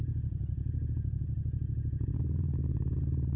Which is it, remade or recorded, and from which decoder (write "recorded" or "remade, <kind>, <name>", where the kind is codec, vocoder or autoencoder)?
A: remade, vocoder, Vocos